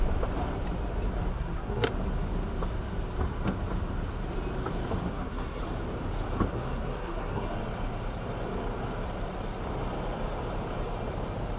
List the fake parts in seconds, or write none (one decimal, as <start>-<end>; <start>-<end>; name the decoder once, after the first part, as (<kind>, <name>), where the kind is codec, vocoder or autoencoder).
1.3-1.9 (codec, SNAC); 5.1-5.6; 6.5-7.5